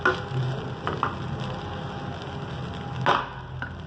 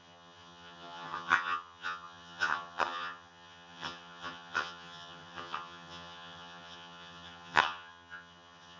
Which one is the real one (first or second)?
first